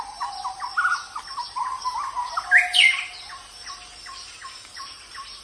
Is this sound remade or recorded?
recorded